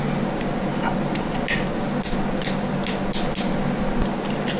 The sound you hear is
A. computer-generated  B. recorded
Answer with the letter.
B